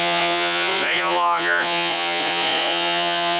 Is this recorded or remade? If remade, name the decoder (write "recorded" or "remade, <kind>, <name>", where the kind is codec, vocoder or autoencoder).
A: remade, vocoder, Vocos